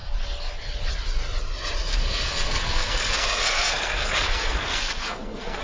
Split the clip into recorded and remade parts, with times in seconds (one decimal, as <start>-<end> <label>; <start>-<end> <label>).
0.0-1.9 recorded; 1.9-5.6 remade